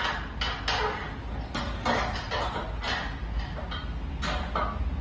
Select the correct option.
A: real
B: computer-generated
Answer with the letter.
A